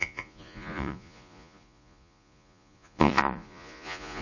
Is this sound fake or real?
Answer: fake